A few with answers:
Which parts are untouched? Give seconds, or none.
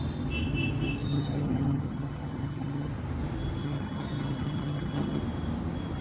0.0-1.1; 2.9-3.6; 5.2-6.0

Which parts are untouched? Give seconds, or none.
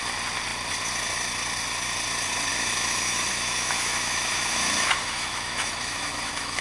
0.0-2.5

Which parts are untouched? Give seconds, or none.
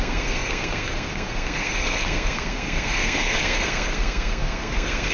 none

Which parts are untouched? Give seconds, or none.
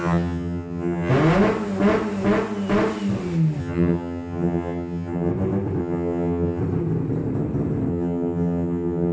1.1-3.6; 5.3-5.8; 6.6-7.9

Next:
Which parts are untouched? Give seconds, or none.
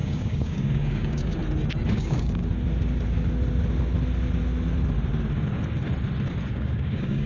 1.4-1.9; 2.4-6.5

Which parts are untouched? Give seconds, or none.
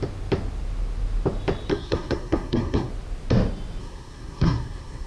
0.0-1.7; 2.9-3.8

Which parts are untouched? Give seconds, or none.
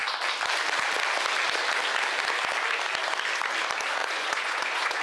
0.0-4.0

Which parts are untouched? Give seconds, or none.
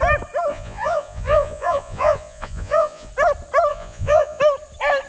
0.0-0.5; 3.1-3.7; 4.4-5.1